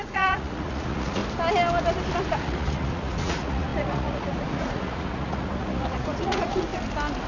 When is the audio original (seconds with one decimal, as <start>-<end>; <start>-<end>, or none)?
1.2-2.4; 6.7-7.3

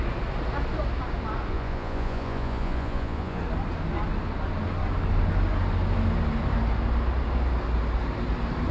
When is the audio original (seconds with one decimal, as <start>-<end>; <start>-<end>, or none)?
0.0-1.5; 3.4-8.7

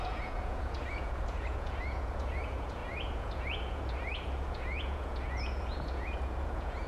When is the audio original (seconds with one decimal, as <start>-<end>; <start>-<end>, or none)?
none

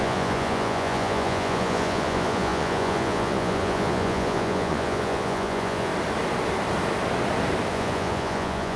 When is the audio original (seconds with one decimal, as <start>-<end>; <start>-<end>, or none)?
5.9-7.7